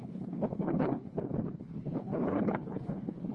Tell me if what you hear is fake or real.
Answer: fake